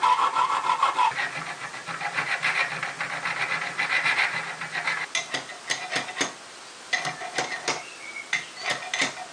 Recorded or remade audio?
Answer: recorded